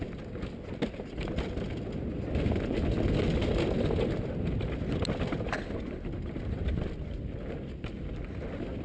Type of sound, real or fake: real